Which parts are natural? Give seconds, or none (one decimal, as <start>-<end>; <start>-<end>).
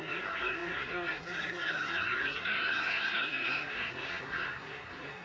none